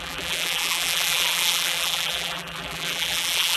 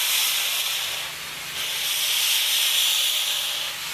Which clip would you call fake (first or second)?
first